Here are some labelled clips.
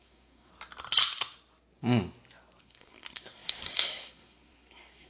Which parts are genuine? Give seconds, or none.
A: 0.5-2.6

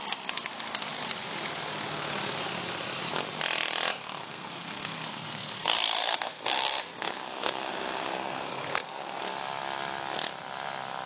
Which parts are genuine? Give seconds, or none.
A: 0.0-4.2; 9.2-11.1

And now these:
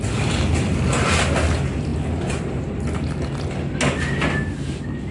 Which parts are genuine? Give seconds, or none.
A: 0.0-5.1

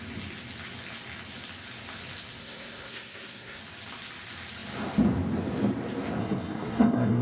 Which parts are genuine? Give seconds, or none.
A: 0.0-2.4; 3.6-6.2